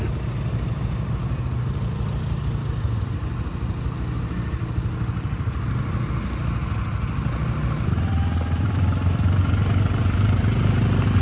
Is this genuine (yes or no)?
yes